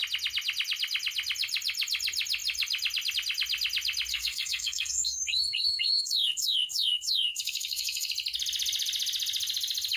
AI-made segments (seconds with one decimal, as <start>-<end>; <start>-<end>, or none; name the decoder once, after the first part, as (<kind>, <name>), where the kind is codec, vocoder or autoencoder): 4.1-8.1 (codec, SNAC)